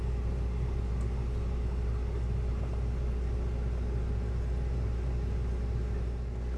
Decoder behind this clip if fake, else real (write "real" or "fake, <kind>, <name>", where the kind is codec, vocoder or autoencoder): real